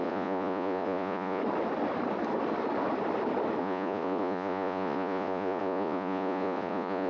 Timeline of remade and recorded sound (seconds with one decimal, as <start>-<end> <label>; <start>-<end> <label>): 0.0-1.4 remade; 1.4-3.6 recorded; 3.6-7.1 remade